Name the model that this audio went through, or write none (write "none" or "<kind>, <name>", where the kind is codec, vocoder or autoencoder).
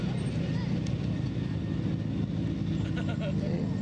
none